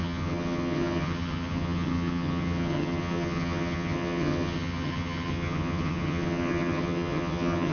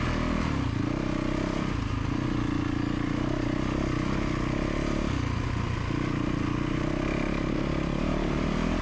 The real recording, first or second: second